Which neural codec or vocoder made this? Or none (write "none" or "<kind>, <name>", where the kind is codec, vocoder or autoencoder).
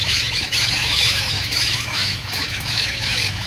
autoencoder, DAC-VAE